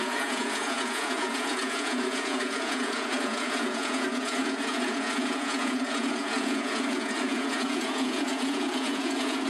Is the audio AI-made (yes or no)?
yes